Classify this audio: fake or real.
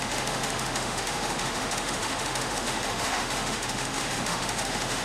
fake